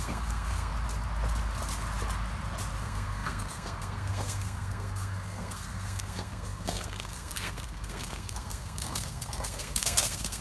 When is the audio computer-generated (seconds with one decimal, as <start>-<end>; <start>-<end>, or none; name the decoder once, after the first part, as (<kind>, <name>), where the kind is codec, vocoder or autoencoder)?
0.0-0.7 (codec, SNAC); 2.8-10.4